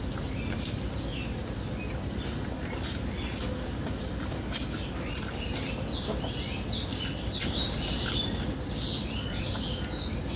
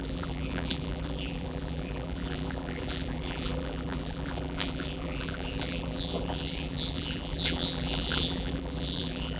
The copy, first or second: second